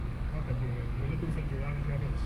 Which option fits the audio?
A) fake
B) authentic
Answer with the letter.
A